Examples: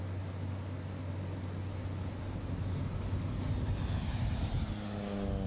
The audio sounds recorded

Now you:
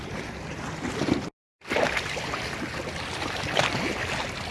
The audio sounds recorded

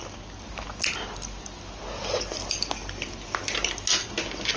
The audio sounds recorded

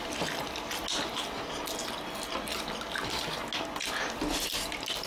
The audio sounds recorded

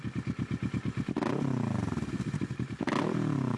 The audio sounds recorded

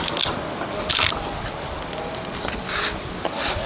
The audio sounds recorded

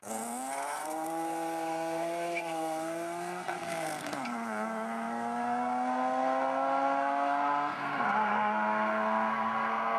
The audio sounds remade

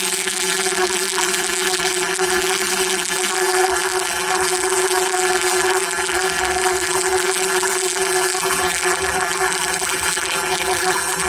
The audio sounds remade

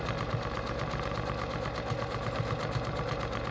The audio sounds recorded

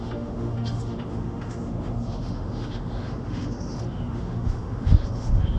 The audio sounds remade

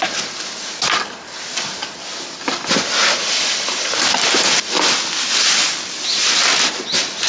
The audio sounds recorded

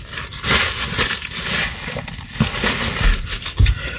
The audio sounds recorded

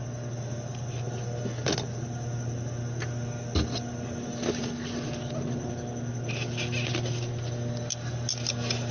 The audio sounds recorded